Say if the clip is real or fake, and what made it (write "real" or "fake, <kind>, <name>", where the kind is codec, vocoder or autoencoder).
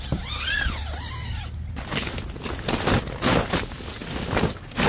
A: real